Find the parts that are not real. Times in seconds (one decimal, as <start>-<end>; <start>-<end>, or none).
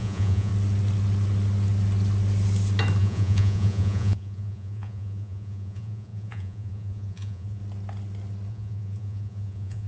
0.0-0.5; 3.0-7.6; 8.5-9.9